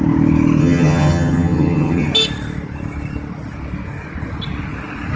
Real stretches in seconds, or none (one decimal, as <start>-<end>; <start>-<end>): 0.0-0.6; 2.1-5.2